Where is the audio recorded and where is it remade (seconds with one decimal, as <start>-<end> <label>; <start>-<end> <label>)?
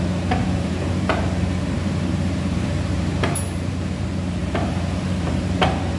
0.0-0.4 recorded; 0.4-4.0 remade; 4.0-4.4 recorded; 4.4-5.6 remade; 5.6-6.0 recorded